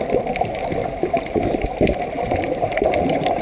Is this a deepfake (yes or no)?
no